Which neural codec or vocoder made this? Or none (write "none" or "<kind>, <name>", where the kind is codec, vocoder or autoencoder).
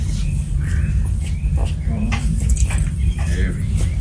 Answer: none